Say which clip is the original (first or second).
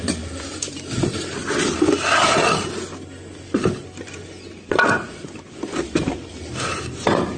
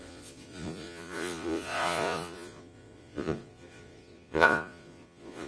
first